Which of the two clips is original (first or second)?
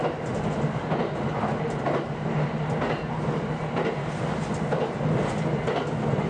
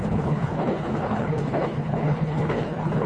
first